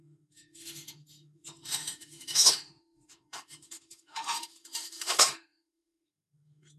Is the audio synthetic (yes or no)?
yes